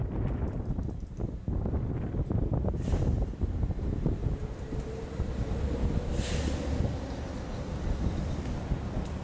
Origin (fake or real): real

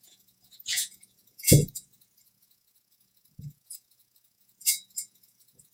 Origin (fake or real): fake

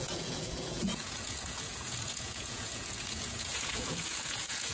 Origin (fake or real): fake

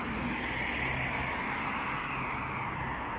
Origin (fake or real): real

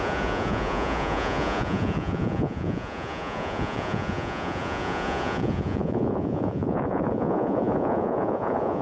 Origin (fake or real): fake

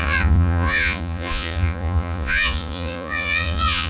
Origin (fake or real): fake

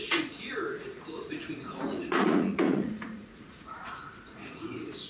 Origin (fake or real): fake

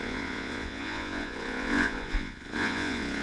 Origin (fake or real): fake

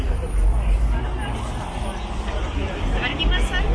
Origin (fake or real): real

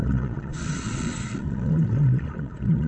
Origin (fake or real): fake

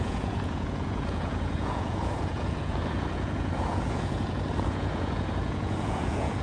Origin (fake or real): fake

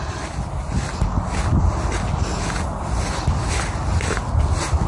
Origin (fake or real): real